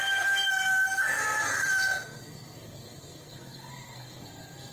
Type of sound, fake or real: fake